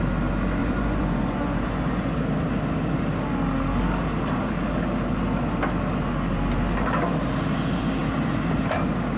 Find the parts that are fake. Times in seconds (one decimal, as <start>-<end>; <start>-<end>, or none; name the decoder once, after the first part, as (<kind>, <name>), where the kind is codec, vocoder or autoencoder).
0.6-2.2 (vocoder, Vocos)

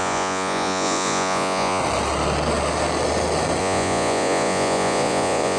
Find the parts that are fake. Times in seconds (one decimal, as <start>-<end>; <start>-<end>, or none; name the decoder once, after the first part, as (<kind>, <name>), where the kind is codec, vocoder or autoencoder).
0.0-1.8 (vocoder, Vocos); 3.6-5.6

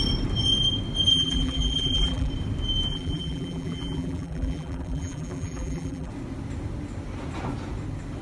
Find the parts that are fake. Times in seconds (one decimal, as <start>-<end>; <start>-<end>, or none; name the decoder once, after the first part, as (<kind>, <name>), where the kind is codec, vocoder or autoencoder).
1.1-2.3 (vocoder, BigVGAN v2); 2.9-6.1

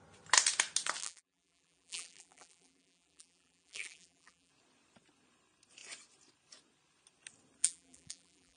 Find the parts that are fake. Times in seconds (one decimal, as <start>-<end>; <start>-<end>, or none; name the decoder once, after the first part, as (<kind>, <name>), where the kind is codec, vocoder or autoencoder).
1.0-4.5 (vocoder, BigVGAN v2); 7.6-8.6

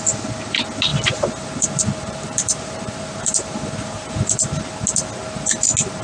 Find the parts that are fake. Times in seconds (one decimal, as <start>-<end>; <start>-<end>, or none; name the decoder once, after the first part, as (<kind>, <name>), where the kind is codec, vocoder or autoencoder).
0.9-4.5 (vocoder, BigVGAN v2)

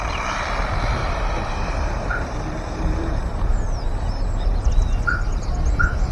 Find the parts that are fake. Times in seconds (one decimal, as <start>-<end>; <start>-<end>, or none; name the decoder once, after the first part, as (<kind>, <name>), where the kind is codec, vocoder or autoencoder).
1.0-4.7 (vocoder, BigVGAN v2)